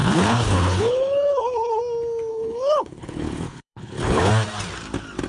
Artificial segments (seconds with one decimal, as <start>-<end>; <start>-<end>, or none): 0.0-1.8; 2.3-4.3